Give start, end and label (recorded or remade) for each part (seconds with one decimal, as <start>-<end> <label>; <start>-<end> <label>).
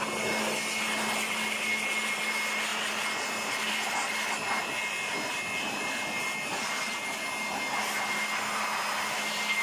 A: 0.0-9.6 recorded